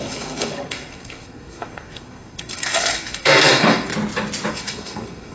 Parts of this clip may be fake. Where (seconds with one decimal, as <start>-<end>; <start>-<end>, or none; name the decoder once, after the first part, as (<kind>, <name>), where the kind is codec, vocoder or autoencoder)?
0.0-3.9 (codec, SNAC); 4.5-5.3